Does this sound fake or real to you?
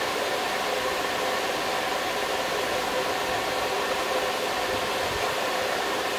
real